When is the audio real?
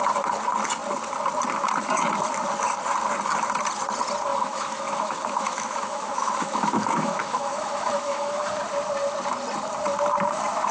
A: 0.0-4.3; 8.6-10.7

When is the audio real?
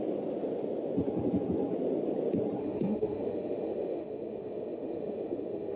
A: 0.0-2.6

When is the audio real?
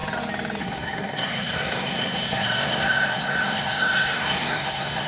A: 0.0-0.6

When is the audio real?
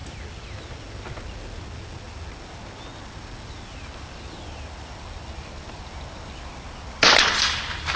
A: 0.0-8.0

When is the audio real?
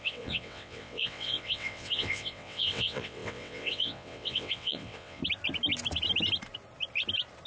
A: 5.2-7.5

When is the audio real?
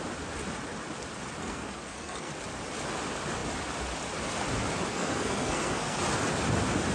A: 0.0-1.4; 2.3-4.9; 6.0-6.9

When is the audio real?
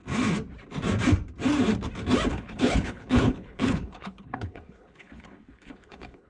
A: 0.0-2.3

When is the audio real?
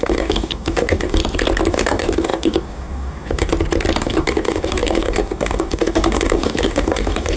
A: 1.2-1.7; 3.5-4.0